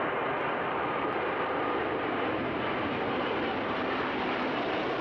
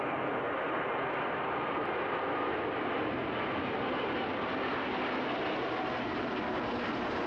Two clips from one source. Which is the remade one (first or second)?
first